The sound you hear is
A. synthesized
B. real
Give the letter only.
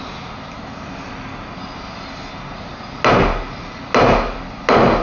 B